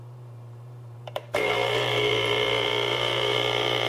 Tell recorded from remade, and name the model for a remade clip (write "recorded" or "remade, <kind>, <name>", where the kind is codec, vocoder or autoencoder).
remade, vocoder, BigVGAN v2